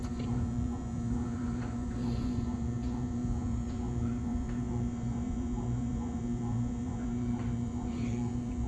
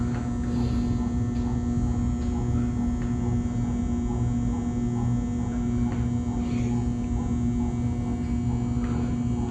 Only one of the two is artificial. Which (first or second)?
first